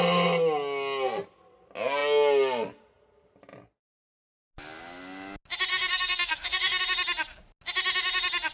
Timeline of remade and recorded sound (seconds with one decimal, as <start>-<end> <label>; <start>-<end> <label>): 0.0-5.7 recorded; 5.7-6.8 remade; 6.8-8.5 recorded